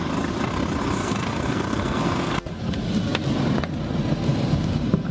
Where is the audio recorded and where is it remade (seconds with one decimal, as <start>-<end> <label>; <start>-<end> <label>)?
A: 0.0-1.0 recorded; 1.0-2.3 remade; 2.3-5.1 recorded